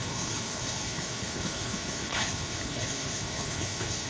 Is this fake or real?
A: fake